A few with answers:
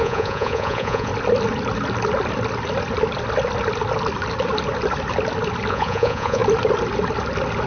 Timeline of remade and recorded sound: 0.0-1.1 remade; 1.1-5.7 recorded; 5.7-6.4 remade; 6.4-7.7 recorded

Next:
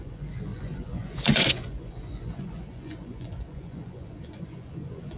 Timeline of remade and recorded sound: 0.0-5.2 remade

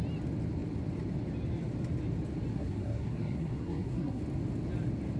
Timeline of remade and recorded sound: 0.0-2.5 recorded; 2.5-4.2 remade; 4.2-5.2 recorded

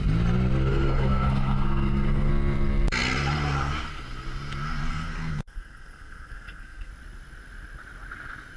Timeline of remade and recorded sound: 0.0-0.7 recorded; 0.7-2.3 remade; 2.3-4.9 recorded; 4.9-6.9 remade; 6.9-8.6 recorded

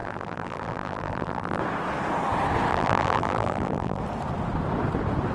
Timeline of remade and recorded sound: 0.0-1.6 remade; 1.6-2.7 recorded; 2.7-4.0 remade; 4.0-5.3 recorded